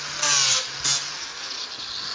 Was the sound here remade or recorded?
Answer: recorded